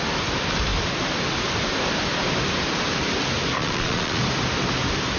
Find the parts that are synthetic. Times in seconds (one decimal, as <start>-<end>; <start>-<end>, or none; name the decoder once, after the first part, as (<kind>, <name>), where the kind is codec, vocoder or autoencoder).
3.6-4.2 (vocoder, Vocos)